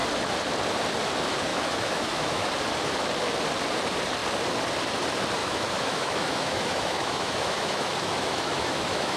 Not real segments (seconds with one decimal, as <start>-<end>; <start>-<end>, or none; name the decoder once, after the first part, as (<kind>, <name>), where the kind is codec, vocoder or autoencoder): 1.5-2.5 (autoencoder, DAC-VAE); 5.4-9.2